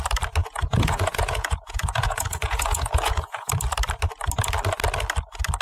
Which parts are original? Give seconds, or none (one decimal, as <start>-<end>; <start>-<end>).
0.0-0.4; 3.5-5.6